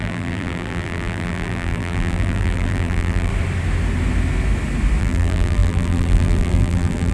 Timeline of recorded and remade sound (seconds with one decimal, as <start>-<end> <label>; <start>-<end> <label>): 0.0-3.3 remade; 3.3-5.0 recorded; 5.0-7.1 remade